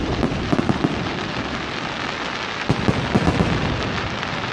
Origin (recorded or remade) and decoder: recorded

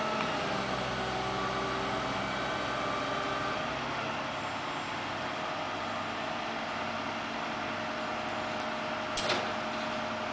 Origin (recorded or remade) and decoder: recorded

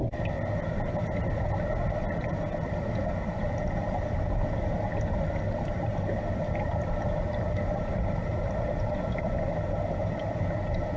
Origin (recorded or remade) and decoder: recorded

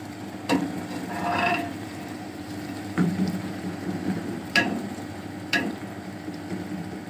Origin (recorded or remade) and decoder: remade, vocoder, BigVGAN v2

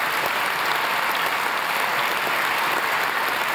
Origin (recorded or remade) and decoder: recorded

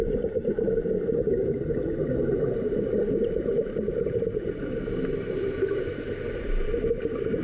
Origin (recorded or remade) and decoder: remade, vocoder, BigVGAN v2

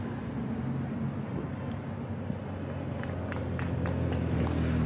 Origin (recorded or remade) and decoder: recorded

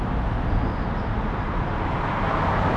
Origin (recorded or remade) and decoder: recorded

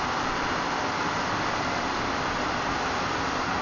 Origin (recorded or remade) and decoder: recorded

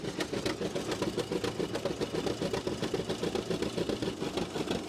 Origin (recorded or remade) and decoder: recorded